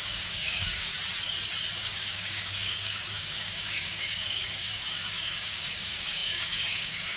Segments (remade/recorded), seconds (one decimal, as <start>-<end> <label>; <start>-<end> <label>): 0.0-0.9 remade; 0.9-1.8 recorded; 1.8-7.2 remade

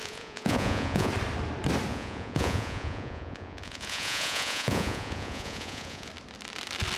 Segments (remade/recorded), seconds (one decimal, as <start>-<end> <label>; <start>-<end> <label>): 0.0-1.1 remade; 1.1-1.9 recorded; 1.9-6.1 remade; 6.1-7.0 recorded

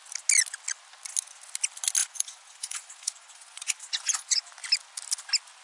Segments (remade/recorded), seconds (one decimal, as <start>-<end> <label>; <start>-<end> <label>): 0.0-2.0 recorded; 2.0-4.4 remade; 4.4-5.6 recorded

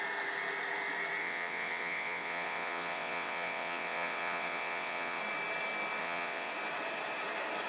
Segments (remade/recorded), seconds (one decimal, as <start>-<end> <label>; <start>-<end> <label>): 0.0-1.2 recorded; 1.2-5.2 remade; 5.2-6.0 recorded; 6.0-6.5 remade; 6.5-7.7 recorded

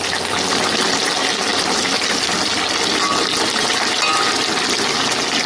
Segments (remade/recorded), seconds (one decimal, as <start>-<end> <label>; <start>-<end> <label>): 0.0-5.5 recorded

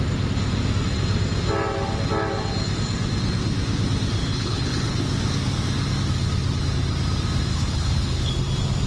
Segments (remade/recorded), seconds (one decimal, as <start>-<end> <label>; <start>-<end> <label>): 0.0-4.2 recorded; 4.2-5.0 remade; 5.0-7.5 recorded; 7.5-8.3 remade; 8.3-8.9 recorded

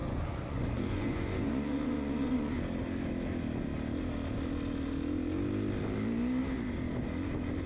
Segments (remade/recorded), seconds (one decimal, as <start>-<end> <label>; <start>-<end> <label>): 0.0-2.6 remade; 2.6-7.7 recorded

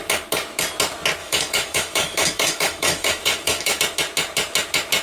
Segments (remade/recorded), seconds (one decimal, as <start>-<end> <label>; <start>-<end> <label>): 0.0-1.2 recorded; 1.2-3.8 remade; 3.8-5.0 recorded